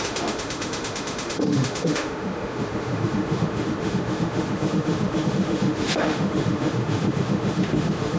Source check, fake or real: fake